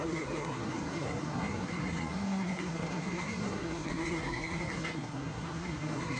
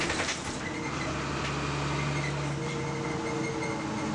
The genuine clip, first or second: second